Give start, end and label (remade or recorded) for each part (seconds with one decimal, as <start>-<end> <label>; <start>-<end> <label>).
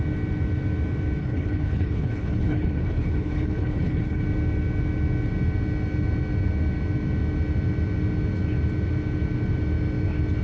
0.0-1.2 recorded; 1.2-4.2 remade; 4.2-10.4 recorded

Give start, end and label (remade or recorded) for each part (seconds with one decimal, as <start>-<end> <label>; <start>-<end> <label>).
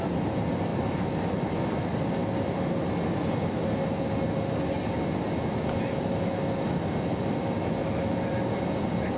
0.0-9.2 recorded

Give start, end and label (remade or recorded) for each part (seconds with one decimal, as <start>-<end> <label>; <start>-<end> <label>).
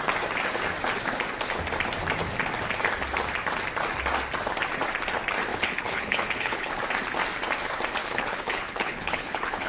0.0-5.5 recorded; 5.5-6.8 remade; 6.8-8.0 recorded; 8.0-9.7 remade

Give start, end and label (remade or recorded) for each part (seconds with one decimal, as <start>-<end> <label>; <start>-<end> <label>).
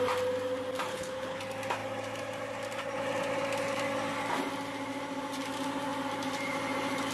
0.0-0.9 recorded; 0.9-1.4 remade; 1.4-7.1 recorded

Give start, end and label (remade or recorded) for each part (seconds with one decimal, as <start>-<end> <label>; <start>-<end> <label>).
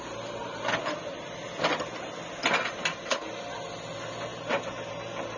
0.0-5.4 recorded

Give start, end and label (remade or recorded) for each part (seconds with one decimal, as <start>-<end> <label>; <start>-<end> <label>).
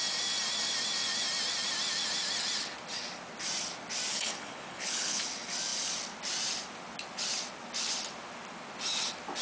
0.0-4.1 recorded; 4.1-5.2 remade; 5.2-9.4 recorded